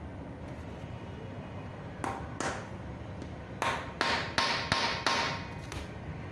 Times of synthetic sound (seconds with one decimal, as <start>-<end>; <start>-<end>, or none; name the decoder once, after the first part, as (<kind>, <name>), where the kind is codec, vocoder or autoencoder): none

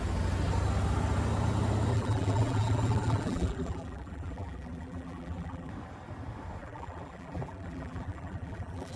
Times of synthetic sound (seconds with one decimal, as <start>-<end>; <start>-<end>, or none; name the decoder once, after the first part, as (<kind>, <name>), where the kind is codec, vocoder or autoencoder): 1.9-5.7 (vocoder, BigVGAN v2); 6.6-9.0